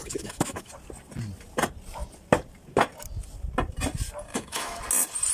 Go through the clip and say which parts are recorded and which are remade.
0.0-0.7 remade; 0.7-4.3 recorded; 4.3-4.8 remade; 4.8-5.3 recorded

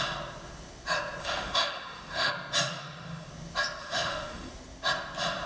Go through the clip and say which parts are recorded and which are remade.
0.0-1.2 recorded; 1.2-2.3 remade; 2.3-2.8 recorded; 2.8-3.3 remade; 3.3-3.8 recorded; 3.8-4.5 remade; 4.5-5.5 recorded

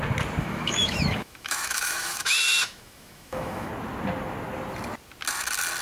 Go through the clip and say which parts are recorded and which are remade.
0.0-0.4 recorded; 0.4-3.7 remade; 3.7-5.8 recorded

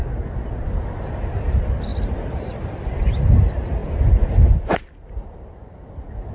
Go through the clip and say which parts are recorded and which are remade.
0.0-6.3 recorded

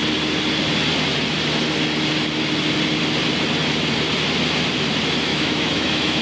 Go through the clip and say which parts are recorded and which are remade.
0.0-5.3 recorded; 5.3-6.2 remade

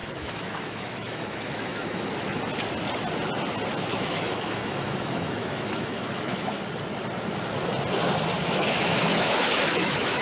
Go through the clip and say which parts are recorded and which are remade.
0.0-2.4 remade; 2.4-3.9 recorded; 3.9-6.6 remade; 6.6-8.4 recorded; 8.4-10.2 remade

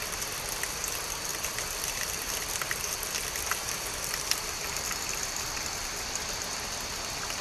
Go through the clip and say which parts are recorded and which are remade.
0.0-7.4 recorded

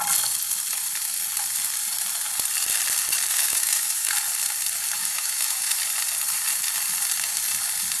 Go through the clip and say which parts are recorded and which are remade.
0.0-3.3 recorded; 3.3-4.1 remade; 4.1-5.0 recorded; 5.0-5.8 remade; 5.8-8.0 recorded